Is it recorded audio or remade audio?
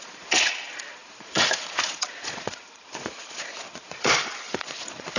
remade